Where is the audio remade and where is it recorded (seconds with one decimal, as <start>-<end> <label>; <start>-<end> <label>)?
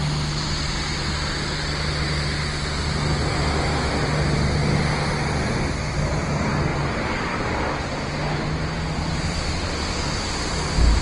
0.0-11.0 recorded